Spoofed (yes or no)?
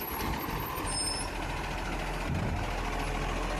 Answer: no